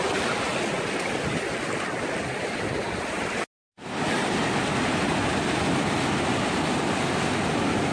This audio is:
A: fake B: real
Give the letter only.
B